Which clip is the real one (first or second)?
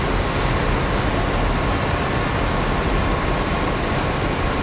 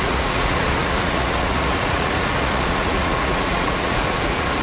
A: first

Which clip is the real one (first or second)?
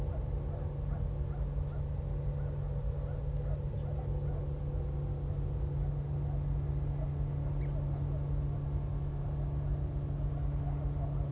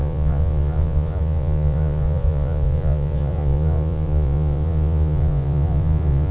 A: first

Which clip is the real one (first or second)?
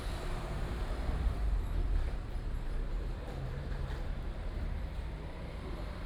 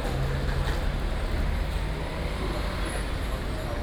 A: second